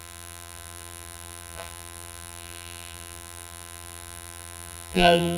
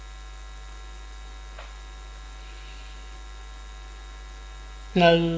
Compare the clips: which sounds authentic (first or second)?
second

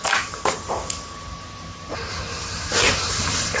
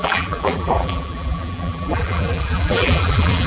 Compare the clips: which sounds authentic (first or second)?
first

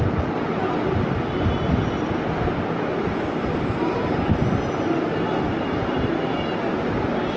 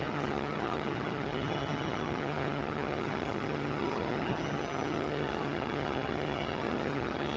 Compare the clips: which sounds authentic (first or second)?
first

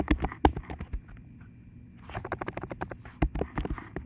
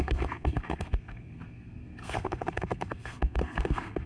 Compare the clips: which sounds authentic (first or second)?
first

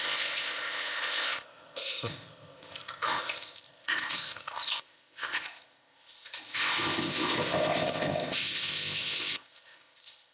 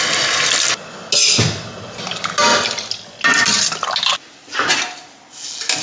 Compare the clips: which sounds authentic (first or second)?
second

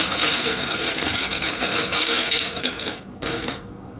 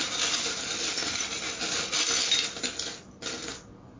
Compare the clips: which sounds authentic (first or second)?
second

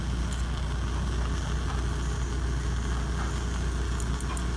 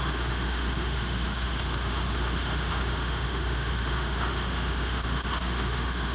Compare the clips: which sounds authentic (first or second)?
first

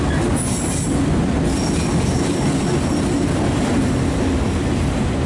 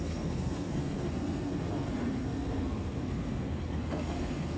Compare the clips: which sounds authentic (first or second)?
first